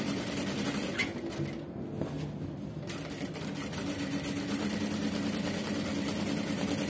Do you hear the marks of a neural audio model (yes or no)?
no